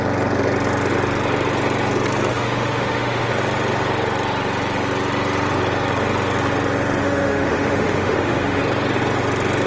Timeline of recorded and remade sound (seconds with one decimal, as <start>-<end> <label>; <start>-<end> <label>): 0.0-2.3 recorded; 2.3-3.3 remade; 3.3-7.0 recorded; 7.0-8.6 remade; 8.6-9.7 recorded